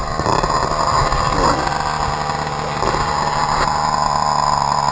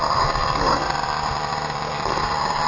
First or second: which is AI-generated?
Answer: second